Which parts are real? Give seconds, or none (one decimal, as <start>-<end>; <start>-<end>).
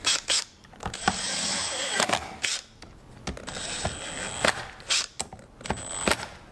2.5-6.5